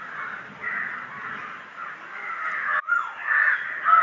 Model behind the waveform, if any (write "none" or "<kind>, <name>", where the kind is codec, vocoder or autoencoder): none